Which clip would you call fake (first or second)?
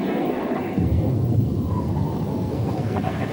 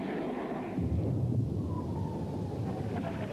first